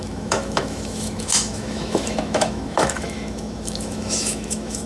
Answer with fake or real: fake